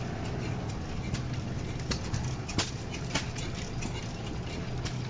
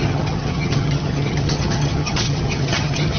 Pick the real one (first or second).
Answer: first